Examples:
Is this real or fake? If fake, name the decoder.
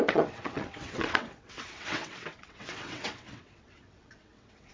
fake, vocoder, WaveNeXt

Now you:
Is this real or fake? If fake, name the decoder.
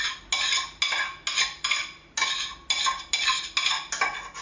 real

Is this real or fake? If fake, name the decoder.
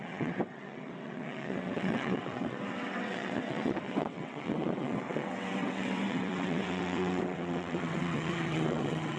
fake, vocoder, WaveNeXt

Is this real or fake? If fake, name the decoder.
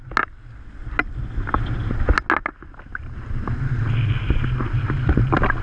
real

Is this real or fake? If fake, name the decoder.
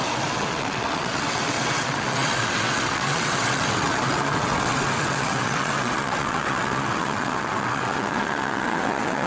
fake, vocoder, WaveNeXt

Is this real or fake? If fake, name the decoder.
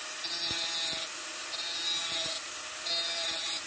real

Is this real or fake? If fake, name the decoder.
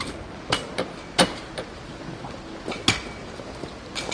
real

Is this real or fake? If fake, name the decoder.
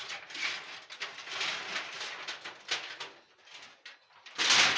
real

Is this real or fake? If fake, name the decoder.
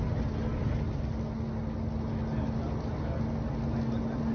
real